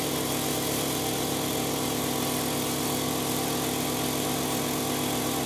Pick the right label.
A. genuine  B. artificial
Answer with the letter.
A